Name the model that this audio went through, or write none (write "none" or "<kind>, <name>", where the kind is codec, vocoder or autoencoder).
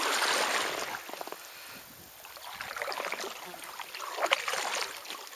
none